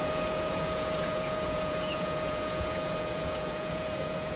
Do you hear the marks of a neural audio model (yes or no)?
yes